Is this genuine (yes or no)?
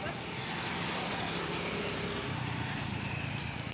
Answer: yes